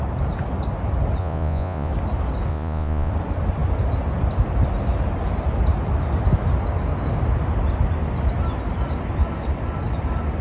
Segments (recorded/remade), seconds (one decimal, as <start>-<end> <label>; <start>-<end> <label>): 0.0-1.2 recorded; 1.2-1.9 remade; 1.9-2.5 recorded; 2.5-3.1 remade; 3.1-10.4 recorded